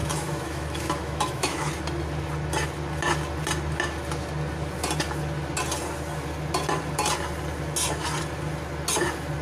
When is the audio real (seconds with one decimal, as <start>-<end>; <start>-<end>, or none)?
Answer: 1.7-9.4